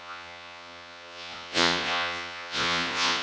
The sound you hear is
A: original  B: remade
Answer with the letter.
B